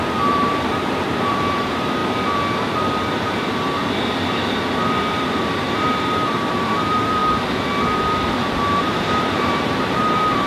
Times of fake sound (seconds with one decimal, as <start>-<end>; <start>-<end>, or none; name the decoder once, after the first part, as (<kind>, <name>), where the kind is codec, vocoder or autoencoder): 0.0-2.0 (vocoder, BigVGAN v2); 5.0-7.2; 8.8-10.5